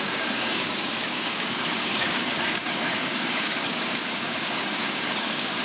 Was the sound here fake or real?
fake